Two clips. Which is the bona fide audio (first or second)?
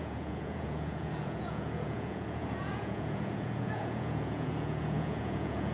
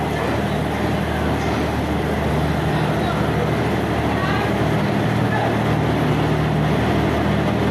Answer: second